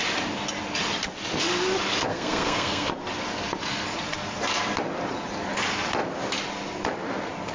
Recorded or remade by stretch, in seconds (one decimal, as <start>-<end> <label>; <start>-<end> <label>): 0.0-2.1 recorded; 2.1-2.9 remade; 2.9-7.5 recorded